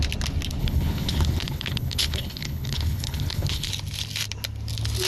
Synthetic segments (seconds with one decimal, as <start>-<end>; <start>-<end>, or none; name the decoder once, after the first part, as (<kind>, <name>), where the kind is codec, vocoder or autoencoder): 0.6-3.7 (codec, HILCodec)